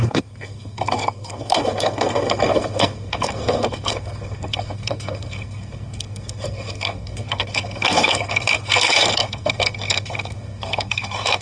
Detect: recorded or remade remade